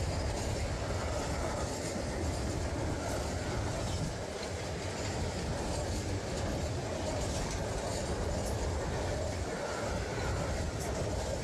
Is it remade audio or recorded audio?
recorded